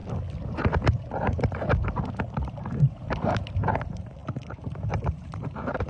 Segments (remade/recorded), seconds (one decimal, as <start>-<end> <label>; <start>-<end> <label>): 0.0-2.5 recorded; 2.5-5.9 remade

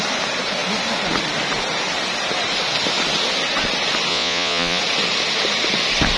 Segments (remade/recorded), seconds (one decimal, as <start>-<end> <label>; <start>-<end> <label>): 0.0-4.1 recorded; 4.1-4.8 remade; 4.8-6.2 recorded

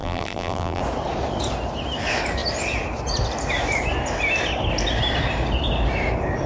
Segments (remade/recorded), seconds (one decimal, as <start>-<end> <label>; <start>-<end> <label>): 0.0-0.8 remade; 0.8-6.5 recorded

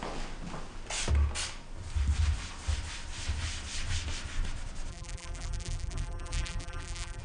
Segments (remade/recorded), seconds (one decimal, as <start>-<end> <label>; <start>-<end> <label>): 0.0-4.9 recorded; 4.9-7.2 remade

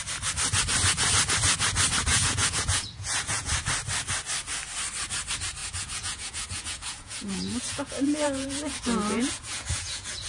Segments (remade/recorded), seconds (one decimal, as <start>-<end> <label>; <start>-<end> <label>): 0.0-2.1 recorded; 2.1-3.5 remade; 3.5-5.6 recorded; 5.6-10.3 remade

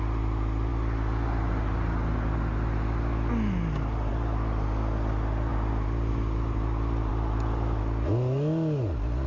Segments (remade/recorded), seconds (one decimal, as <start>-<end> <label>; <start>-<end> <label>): 0.0-9.3 recorded

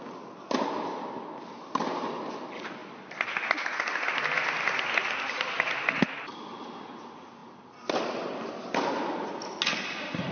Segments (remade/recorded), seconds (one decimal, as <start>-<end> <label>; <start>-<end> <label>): 0.0-10.3 recorded